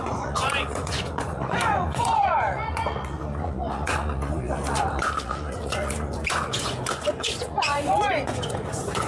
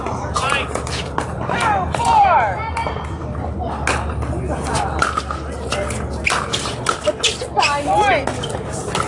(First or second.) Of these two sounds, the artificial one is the first